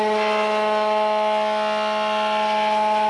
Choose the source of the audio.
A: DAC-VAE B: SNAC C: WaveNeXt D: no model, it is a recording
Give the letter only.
D